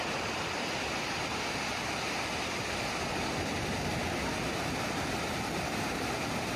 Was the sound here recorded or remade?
remade